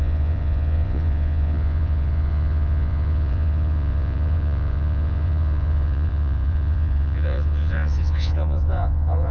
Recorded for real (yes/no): no